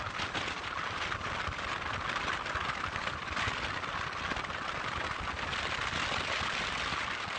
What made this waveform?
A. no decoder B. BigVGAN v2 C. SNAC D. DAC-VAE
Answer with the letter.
A